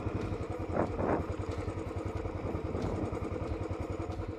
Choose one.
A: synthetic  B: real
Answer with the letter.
B